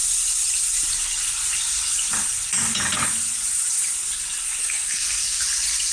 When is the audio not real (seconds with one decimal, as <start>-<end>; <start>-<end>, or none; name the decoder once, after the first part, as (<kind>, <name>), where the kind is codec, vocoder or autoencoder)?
4.6-5.4 (codec, SNAC)